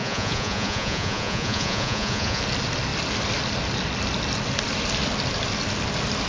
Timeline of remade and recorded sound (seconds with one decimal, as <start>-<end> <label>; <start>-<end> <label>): 0.0-2.4 remade; 2.4-6.3 recorded